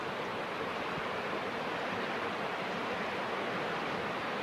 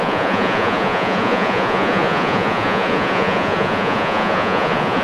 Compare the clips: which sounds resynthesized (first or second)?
second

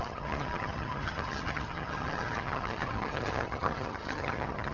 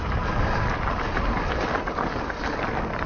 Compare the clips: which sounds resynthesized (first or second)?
first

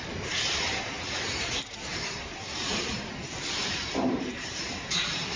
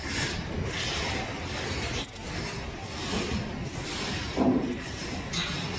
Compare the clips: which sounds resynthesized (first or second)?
first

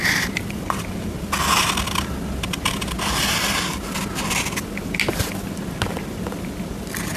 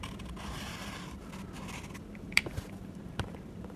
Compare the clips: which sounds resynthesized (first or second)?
second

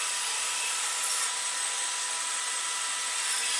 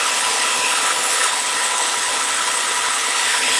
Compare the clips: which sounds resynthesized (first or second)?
second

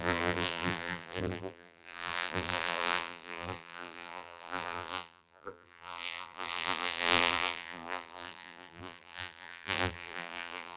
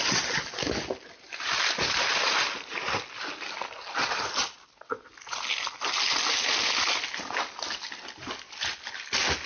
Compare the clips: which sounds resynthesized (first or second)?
first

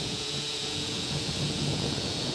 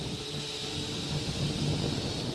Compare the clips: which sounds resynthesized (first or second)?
first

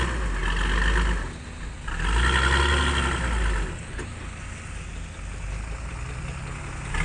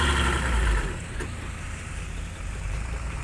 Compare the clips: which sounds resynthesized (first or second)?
second